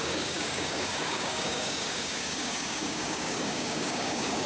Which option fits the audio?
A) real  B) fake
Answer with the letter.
B